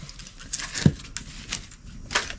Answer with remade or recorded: recorded